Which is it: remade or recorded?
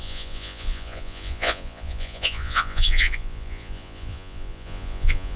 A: remade